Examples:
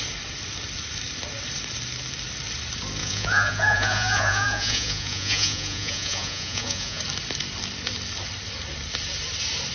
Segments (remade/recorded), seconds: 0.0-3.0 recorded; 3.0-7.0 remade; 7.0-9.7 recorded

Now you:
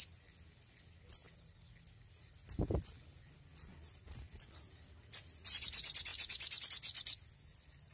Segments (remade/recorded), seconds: 0.0-7.9 recorded

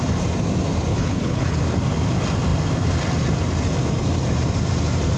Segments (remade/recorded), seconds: 0.0-0.9 recorded; 0.9-1.6 remade; 1.6-5.2 recorded

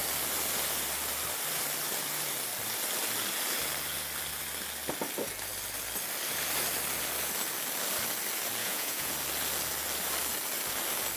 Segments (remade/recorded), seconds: 0.0-8.6 recorded; 8.6-9.1 remade; 9.1-11.2 recorded

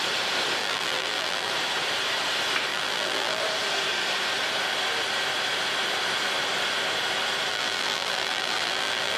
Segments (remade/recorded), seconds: 0.0-0.6 recorded; 0.6-1.5 remade; 1.5-2.7 recorded; 2.7-3.4 remade; 3.4-7.5 recorded; 7.5-9.2 remade

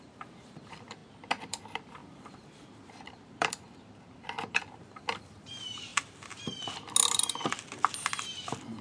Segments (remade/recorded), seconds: 0.0-1.0 remade; 1.0-1.5 recorded; 1.5-5.9 remade; 5.9-8.2 recorded; 8.2-8.8 remade